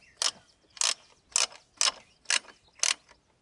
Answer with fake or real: real